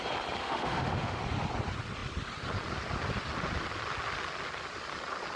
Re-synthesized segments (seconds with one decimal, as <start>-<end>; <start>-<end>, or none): 0.4-1.2